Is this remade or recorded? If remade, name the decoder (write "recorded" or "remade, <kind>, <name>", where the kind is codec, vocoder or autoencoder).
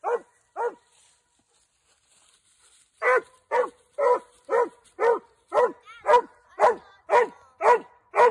recorded